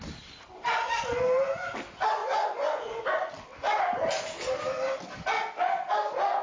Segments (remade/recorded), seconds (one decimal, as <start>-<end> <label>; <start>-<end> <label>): 0.0-2.2 recorded; 2.2-3.3 remade; 3.3-6.4 recorded